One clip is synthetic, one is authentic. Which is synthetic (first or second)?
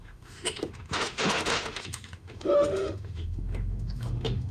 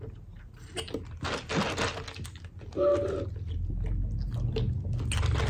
first